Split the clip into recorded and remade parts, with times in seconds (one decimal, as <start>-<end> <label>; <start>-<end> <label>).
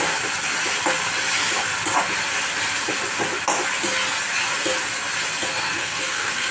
0.0-5.5 recorded; 5.5-6.5 remade